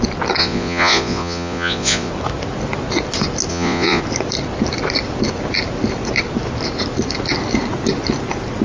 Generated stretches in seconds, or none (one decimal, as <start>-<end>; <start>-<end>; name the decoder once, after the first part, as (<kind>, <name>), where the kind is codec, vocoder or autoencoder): 0.4-2.1 (vocoder, Vocos); 3.5-4.0